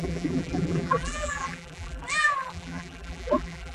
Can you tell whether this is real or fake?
fake